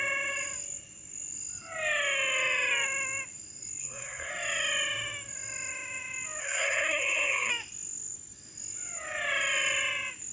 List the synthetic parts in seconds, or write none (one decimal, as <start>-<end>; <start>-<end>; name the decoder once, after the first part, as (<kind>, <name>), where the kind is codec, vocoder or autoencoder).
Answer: 3.8-4.3 (codec, SNAC); 6.4-7.5